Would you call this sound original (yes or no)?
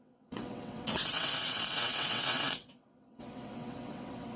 no